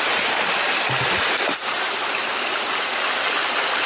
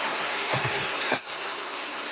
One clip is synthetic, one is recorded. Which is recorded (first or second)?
first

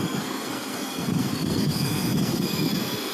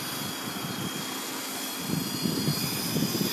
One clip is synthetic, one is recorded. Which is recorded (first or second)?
second